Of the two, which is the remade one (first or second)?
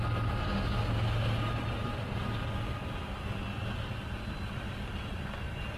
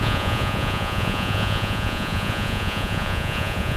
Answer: second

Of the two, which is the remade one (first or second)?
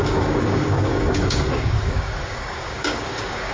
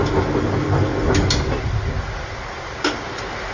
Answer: first